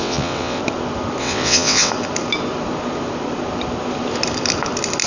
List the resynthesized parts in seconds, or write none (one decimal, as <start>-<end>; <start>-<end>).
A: 0.0-0.6; 1.2-1.9